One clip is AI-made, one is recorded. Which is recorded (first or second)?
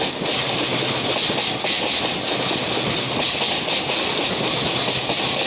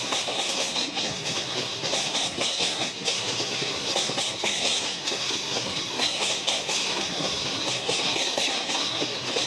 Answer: first